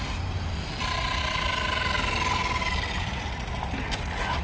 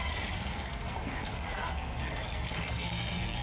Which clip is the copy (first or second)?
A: second